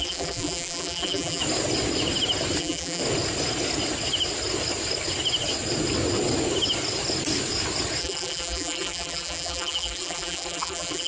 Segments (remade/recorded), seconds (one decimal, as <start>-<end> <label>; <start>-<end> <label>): 0.0-1.4 remade; 1.4-2.6 recorded; 2.6-3.0 remade; 3.0-8.0 recorded; 8.0-11.1 remade